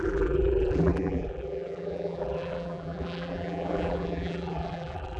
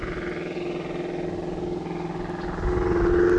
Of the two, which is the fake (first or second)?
first